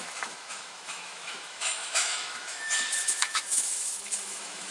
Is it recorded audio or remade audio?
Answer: remade